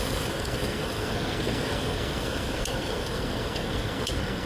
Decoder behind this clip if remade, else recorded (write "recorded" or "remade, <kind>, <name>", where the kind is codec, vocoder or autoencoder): remade, codec, SNAC